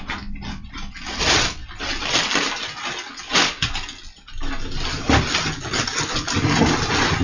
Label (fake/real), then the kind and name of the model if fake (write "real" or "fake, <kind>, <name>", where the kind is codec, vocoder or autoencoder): real